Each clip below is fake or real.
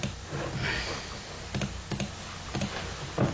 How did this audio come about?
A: real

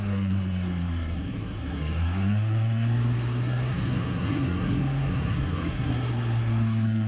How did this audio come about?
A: fake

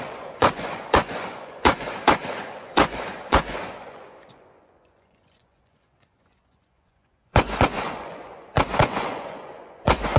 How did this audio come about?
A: fake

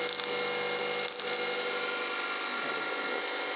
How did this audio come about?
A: real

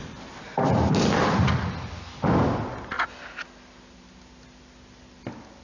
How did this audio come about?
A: real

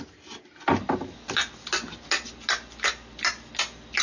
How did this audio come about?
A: real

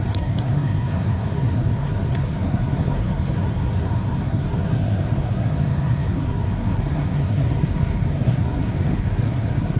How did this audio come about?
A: fake